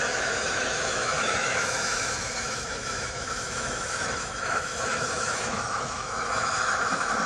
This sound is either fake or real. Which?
fake